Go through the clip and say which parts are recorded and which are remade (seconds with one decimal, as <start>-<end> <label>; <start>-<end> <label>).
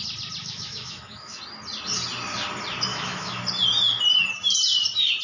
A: 0.0-0.4 recorded; 0.4-1.4 remade; 1.4-2.9 recorded; 2.9-3.4 remade; 3.4-5.2 recorded